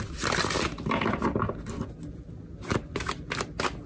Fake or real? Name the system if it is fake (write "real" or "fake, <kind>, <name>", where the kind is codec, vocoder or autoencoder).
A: real